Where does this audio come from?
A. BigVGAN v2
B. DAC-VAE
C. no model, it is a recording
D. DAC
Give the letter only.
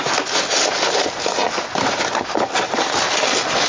C